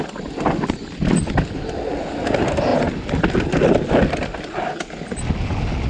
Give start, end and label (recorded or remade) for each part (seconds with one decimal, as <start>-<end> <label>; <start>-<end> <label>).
0.0-5.9 recorded